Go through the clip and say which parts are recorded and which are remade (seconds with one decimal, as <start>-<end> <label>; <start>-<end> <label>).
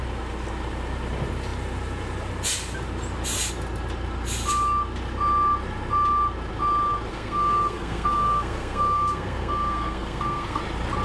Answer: 0.0-7.1 recorded; 7.1-10.6 remade; 10.6-11.0 recorded